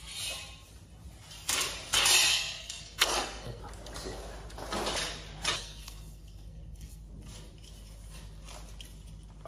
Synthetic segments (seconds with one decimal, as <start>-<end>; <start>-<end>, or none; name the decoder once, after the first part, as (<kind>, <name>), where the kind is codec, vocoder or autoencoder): 2.3-3.6 (codec, SNAC); 5.6-7.0